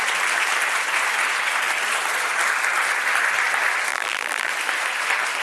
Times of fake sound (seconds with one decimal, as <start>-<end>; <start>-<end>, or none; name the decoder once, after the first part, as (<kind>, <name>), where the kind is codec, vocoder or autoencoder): 3.9-4.5 (vocoder, BigVGAN v2)